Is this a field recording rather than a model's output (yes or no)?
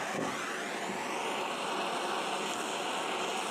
yes